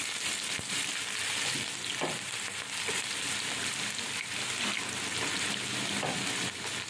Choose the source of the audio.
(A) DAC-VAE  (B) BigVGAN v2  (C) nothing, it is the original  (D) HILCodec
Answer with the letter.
C